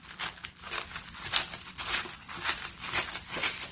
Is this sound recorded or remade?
remade